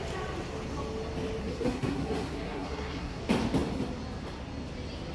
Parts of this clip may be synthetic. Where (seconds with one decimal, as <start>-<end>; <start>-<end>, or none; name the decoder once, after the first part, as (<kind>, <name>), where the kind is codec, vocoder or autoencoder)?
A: 1.4-3.2 (codec, SNAC)